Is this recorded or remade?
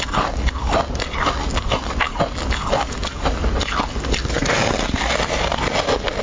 recorded